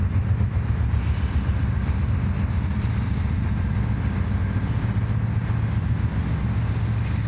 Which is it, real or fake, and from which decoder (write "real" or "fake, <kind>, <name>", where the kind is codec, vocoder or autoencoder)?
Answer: real